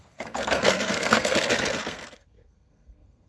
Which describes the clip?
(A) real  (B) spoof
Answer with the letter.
B